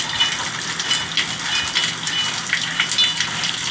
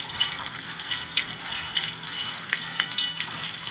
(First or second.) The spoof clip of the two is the second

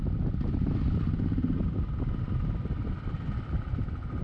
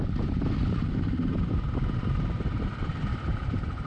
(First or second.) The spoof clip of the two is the second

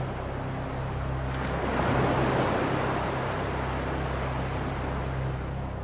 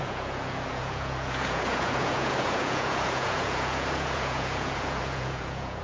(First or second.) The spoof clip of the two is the second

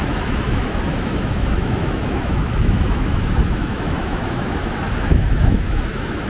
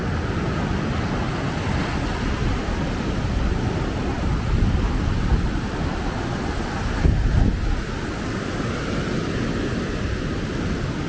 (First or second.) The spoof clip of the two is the first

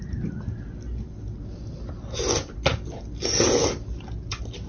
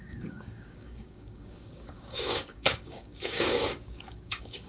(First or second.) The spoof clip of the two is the second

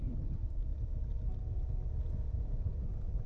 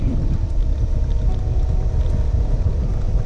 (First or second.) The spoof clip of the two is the second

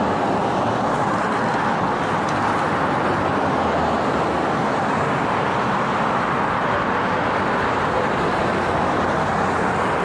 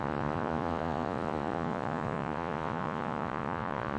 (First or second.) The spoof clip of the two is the second